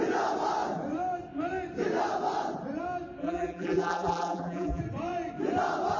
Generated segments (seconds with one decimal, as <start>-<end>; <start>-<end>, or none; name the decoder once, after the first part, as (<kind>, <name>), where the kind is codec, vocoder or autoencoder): 3.2-4.8 (vocoder, BigVGAN v2)